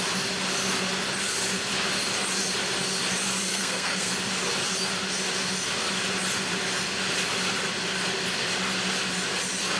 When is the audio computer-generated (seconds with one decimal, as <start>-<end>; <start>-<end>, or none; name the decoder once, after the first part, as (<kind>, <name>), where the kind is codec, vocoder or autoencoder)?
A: 3.5-4.1 (codec, SNAC)